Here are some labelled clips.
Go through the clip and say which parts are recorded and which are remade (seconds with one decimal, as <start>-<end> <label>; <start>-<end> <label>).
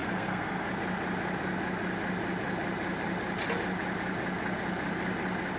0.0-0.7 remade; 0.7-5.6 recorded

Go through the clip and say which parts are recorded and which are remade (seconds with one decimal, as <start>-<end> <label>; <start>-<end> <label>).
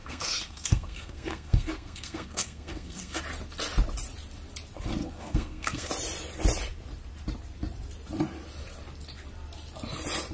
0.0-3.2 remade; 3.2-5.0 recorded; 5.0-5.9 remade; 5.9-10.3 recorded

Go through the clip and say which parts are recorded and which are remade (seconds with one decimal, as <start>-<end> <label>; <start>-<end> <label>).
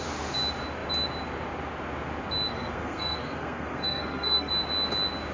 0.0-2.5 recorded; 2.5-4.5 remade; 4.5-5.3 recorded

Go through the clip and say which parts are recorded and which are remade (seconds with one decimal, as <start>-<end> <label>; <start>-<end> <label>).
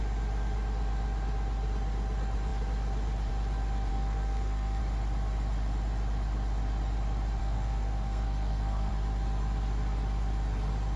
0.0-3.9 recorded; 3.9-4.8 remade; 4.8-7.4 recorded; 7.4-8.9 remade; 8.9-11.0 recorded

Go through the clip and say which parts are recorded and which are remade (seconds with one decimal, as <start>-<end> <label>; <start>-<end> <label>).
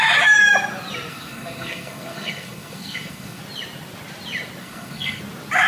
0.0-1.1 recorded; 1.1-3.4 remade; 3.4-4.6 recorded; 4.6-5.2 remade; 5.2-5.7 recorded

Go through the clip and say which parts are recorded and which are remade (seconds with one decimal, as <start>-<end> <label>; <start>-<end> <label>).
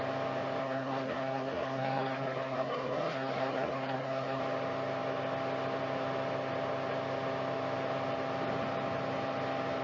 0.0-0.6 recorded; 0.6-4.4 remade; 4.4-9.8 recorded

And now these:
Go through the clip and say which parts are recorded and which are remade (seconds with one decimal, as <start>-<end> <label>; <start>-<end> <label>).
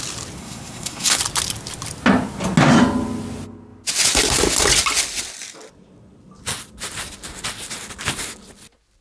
0.0-0.4 recorded; 0.4-1.2 remade; 1.2-9.0 recorded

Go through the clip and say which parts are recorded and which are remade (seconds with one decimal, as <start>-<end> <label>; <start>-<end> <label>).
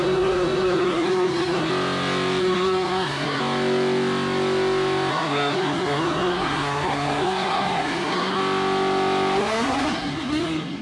0.0-1.7 remade; 1.7-2.4 recorded; 2.4-3.4 remade; 3.4-5.1 recorded; 5.1-8.4 remade; 8.4-9.4 recorded; 9.4-10.8 remade